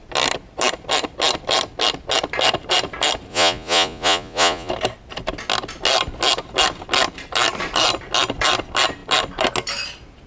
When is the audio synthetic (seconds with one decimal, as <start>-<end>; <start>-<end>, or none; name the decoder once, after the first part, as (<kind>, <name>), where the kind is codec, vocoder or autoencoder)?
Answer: 3.3-4.7 (vocoder, Vocos)

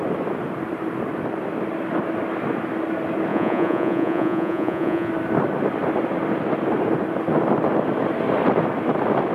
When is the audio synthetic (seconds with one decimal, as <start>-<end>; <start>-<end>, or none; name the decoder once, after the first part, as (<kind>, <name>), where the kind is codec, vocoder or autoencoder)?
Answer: 3.3-5.1 (vocoder, Vocos)

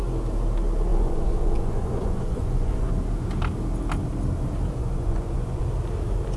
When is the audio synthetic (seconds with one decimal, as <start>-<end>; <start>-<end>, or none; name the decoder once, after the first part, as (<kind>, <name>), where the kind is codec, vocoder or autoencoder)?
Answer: 0.9-2.9 (vocoder, Vocos); 4.8-5.6

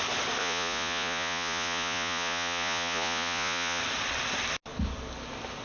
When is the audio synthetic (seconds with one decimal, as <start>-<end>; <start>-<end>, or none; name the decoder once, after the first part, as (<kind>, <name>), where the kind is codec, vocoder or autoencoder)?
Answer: 0.4-3.8 (vocoder, Vocos)

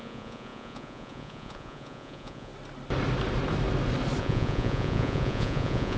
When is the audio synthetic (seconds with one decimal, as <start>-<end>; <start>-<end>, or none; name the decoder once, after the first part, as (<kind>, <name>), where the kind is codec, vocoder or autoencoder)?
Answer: 0.0-2.5 (vocoder, Vocos); 4.2-6.0

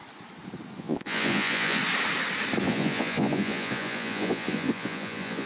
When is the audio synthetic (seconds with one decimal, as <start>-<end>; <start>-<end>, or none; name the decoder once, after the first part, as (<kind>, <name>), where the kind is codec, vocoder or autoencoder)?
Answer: 0.8-1.8 (vocoder, Vocos); 2.6-5.5

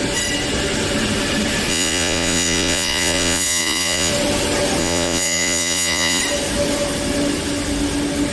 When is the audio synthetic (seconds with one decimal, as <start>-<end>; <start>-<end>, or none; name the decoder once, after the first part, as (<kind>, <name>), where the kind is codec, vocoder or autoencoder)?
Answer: 1.7-4.1 (vocoder, Vocos); 4.8-6.2